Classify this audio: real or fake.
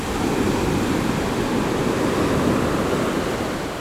real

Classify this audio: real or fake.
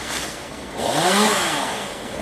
fake